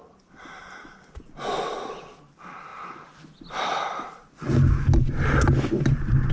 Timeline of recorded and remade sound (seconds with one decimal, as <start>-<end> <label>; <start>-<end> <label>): 0.0-6.3 recorded